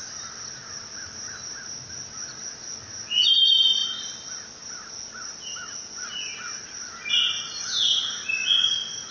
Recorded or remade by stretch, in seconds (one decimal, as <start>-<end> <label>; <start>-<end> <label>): 0.0-9.1 recorded

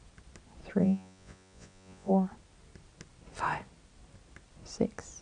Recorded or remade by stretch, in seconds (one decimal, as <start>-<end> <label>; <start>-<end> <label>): 0.0-0.8 recorded; 0.8-2.1 remade; 2.1-5.2 recorded

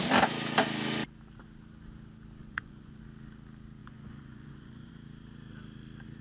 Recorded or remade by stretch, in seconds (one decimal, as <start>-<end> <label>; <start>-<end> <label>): 0.0-2.4 recorded; 2.4-3.0 remade; 3.0-3.8 recorded; 3.8-4.9 remade; 4.9-6.2 recorded

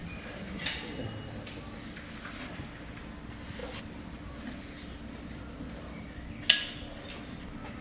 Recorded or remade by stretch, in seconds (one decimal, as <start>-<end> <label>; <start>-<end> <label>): 0.0-7.8 recorded

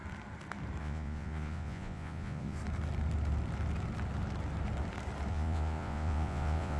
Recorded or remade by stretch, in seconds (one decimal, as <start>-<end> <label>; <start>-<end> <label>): 0.0-0.8 recorded; 0.8-2.6 remade; 2.6-5.3 recorded; 5.3-6.8 remade

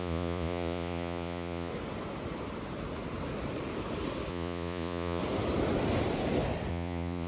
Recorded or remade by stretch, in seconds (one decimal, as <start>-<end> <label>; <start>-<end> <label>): 0.0-1.7 remade; 1.7-4.3 recorded; 4.3-5.2 remade; 5.2-6.7 recorded; 6.7-7.3 remade